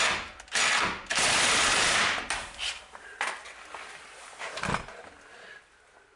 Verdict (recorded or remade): recorded